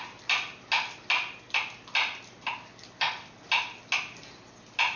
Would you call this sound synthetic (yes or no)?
no